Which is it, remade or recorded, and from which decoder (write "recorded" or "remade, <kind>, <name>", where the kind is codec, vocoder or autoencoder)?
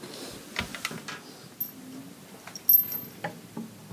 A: recorded